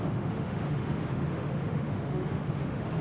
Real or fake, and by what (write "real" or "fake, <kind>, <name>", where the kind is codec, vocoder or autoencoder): fake, autoencoder, DAC-VAE